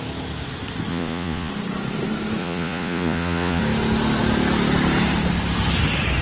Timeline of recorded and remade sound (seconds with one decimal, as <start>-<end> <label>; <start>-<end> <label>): 0.0-0.9 recorded; 0.9-1.5 remade; 1.5-2.4 recorded; 2.4-3.6 remade; 3.6-6.2 recorded